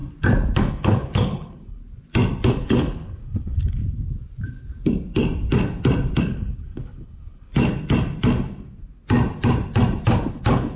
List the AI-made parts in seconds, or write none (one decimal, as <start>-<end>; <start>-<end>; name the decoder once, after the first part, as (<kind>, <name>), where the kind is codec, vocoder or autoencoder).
0.6-1.8 (codec, HILCodec); 2.5-3.8; 6.2-7.5; 10.3-10.8